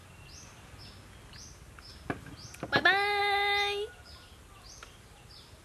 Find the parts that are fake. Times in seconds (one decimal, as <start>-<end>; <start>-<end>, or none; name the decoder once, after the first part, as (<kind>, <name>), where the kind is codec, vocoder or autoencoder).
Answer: none